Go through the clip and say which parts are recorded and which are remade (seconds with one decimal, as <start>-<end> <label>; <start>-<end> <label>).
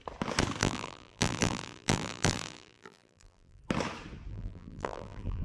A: 0.0-0.6 recorded; 0.6-3.6 remade; 3.6-4.3 recorded; 4.3-5.4 remade